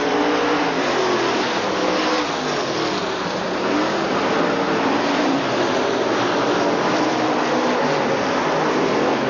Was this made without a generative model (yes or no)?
yes